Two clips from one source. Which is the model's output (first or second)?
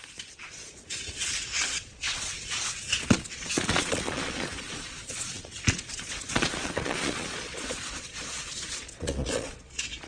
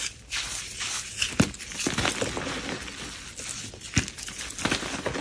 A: first